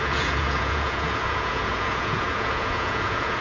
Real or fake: fake